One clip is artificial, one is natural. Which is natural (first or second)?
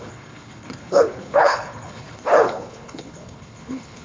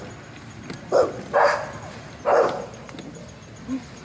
second